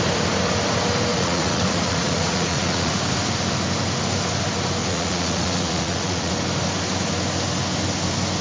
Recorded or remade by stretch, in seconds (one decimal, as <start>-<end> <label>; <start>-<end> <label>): 0.0-1.1 recorded; 1.1-2.9 remade; 2.9-4.8 recorded; 4.8-6.3 remade; 6.3-8.4 recorded